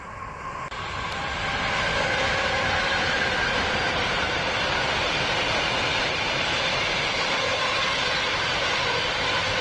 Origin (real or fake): fake